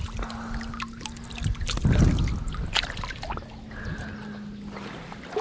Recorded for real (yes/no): yes